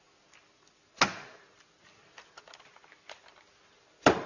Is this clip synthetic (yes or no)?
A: no